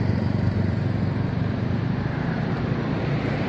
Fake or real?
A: fake